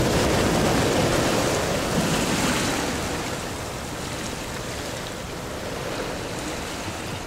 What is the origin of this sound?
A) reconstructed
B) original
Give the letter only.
B